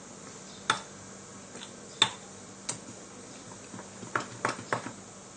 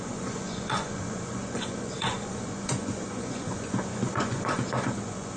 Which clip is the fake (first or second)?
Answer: second